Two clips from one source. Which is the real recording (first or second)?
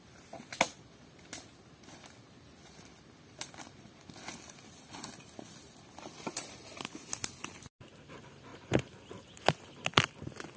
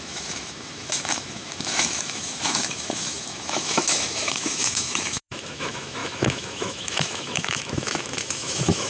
first